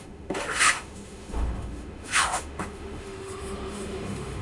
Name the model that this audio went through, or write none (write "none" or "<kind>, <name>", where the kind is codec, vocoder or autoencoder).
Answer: autoencoder, DAC-VAE